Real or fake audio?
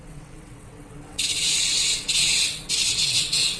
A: fake